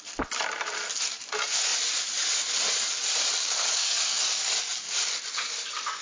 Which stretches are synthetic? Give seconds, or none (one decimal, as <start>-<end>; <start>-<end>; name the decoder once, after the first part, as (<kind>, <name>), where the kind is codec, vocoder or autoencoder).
3.4-5.1 (codec, DAC)